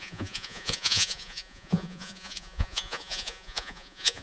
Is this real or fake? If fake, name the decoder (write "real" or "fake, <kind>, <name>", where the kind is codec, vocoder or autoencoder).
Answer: fake, vocoder, Vocos